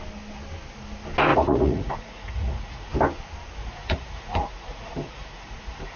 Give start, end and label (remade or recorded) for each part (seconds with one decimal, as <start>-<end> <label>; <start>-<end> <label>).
0.0-1.3 recorded; 1.3-2.9 remade; 2.9-3.6 recorded; 3.6-6.0 remade